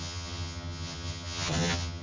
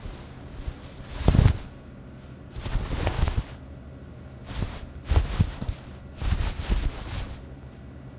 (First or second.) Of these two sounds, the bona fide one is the second